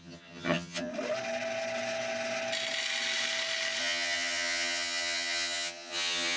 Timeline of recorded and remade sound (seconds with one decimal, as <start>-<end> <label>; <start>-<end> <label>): 0.0-0.9 remade; 0.9-3.8 recorded; 3.8-6.4 remade